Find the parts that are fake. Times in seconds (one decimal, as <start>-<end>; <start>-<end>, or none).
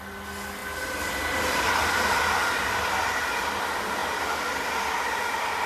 none